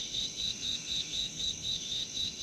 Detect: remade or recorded remade